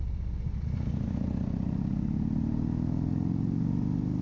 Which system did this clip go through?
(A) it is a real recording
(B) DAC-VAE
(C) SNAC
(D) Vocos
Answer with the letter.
A